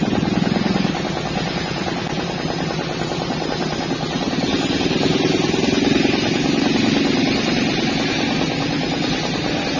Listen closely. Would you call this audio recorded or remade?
recorded